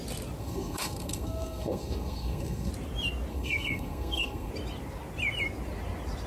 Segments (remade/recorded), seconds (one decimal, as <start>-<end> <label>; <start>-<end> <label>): 0.0-0.4 recorded; 0.4-2.7 remade; 2.7-3.3 recorded; 3.3-4.5 remade; 4.5-6.3 recorded